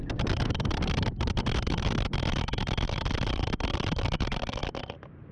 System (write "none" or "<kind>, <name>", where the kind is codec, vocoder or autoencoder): none